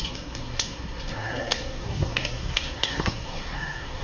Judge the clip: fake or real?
fake